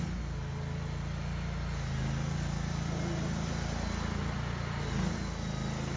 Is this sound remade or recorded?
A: recorded